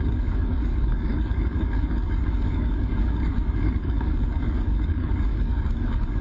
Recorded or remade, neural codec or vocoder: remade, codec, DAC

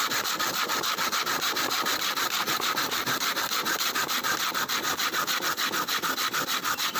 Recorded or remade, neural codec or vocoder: recorded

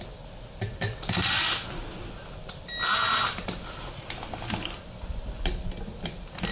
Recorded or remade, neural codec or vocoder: recorded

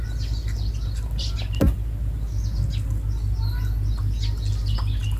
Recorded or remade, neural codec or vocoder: recorded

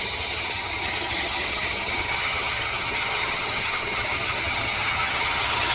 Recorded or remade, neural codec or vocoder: remade, vocoder, HiFi-GAN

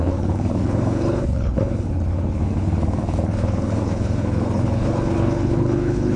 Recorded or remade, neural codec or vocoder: remade, codec, HILCodec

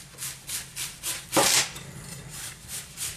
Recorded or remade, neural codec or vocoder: recorded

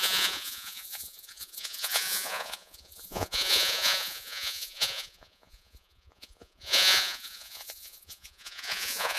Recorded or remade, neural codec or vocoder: remade, vocoder, Vocos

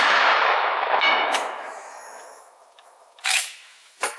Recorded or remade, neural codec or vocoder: remade, autoencoder, DAC-VAE